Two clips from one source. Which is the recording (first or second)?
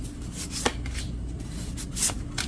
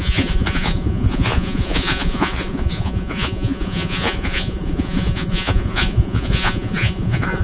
first